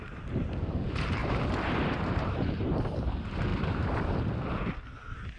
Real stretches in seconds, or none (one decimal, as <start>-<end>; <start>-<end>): 0.0-1.2; 3.1-3.5; 4.2-5.4